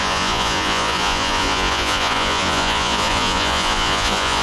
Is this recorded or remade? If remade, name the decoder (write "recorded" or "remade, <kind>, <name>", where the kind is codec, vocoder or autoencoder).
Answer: remade, vocoder, Vocos